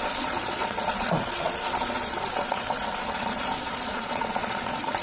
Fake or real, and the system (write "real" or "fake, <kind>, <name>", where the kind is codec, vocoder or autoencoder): fake, vocoder, Vocos